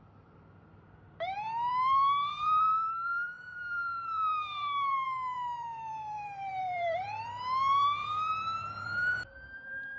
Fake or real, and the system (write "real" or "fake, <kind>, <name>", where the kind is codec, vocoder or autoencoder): fake, vocoder, BigVGAN v2